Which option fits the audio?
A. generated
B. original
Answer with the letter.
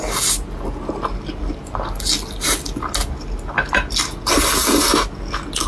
B